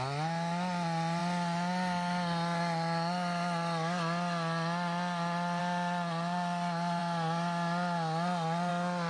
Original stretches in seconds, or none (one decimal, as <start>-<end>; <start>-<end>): 0.0-9.1